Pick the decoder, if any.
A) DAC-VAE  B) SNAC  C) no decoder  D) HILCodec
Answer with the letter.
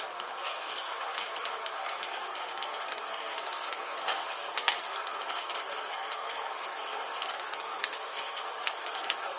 B